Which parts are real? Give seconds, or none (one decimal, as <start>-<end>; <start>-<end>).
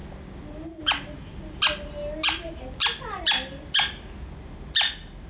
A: 0.0-5.3